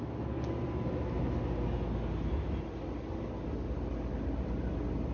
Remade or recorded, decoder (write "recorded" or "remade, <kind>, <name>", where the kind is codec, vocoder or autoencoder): recorded